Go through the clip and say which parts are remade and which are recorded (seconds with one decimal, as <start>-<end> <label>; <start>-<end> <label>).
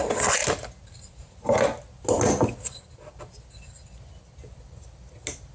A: 0.0-5.5 recorded